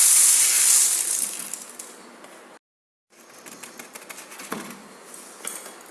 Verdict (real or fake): real